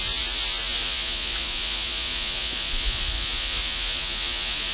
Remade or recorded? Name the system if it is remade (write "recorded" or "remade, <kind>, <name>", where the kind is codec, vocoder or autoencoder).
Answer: remade, vocoder, Vocos